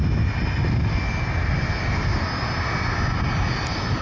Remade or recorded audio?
recorded